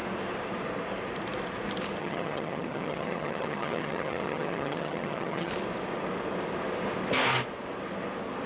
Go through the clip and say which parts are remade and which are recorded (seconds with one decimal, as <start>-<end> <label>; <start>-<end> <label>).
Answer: 0.0-2.0 recorded; 2.0-5.5 remade; 5.5-8.5 recorded